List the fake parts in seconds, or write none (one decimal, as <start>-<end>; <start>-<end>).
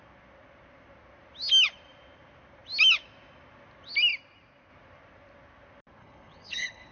6.0-6.9